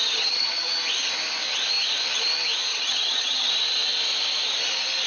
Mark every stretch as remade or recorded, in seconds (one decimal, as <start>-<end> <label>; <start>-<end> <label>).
0.0-0.7 remade; 0.7-2.7 recorded; 2.7-3.5 remade; 3.5-5.1 recorded